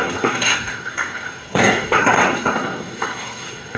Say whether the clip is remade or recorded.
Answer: remade